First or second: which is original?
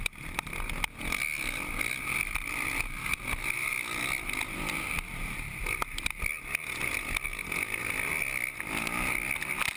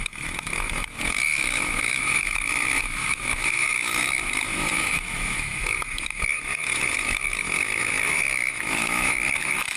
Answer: first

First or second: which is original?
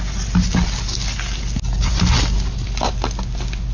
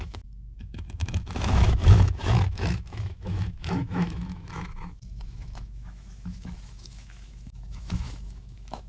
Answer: first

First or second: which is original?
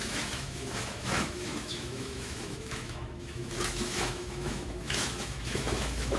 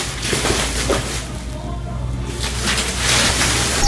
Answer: second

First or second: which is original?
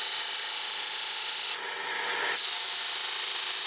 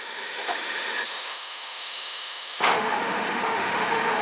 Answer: first